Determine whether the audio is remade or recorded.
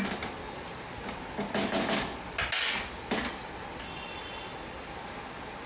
recorded